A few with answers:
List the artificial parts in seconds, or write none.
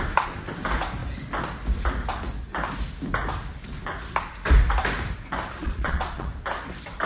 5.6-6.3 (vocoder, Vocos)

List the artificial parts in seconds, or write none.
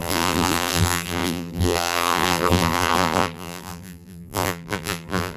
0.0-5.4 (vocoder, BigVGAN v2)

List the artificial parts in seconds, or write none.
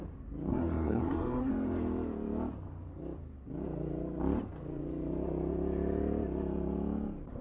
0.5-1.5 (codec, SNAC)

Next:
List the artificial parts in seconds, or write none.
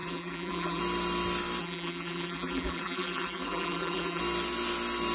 0.0-0.8 (vocoder, BigVGAN v2); 1.6-4.2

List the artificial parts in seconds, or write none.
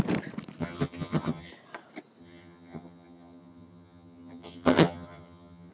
0.6-1.5 (vocoder, HiFi-GAN); 2.2-5.7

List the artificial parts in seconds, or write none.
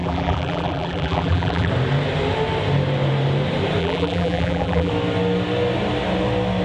0.0-1.7 (vocoder, BigVGAN v2); 3.8-4.9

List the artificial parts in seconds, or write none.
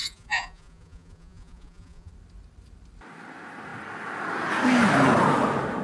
0.0-2.1 (vocoder, Vocos)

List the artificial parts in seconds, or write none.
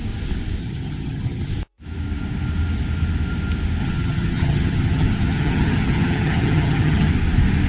0.6-1.5 (vocoder, HiFi-GAN); 3.8-7.1